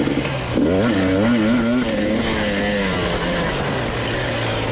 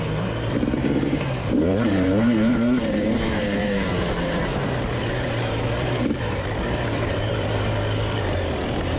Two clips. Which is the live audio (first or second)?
first